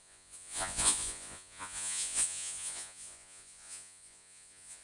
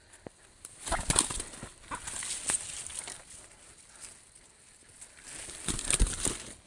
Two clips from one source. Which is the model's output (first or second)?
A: first